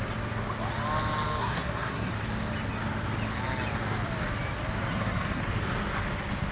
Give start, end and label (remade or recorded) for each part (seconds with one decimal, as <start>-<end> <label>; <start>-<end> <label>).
0.0-1.4 recorded; 1.4-2.1 remade; 2.1-4.9 recorded; 4.9-5.4 remade; 5.4-6.5 recorded